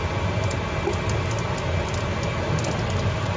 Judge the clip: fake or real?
real